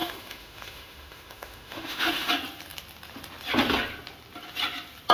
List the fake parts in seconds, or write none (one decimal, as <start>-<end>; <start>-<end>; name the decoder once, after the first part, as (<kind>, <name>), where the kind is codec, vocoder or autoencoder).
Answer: 0.0-2.3 (autoencoder, DAC-VAE)